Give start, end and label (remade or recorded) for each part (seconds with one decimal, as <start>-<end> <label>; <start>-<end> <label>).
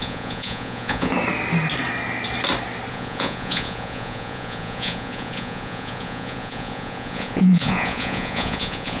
0.0-1.1 remade; 1.1-2.9 recorded; 2.9-9.0 remade